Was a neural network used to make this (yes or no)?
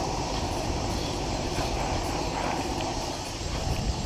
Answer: yes